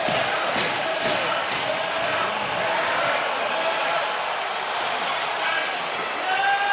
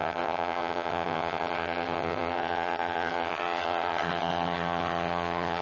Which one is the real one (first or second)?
first